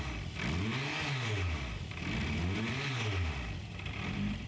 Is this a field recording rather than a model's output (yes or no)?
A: yes